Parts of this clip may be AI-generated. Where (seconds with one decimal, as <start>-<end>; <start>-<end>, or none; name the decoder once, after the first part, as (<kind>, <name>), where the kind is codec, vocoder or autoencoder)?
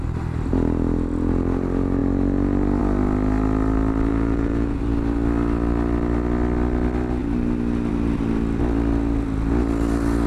4.1-4.8 (vocoder, Vocos)